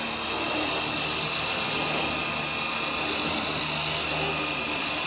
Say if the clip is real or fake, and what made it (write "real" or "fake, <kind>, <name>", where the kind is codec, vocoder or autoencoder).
real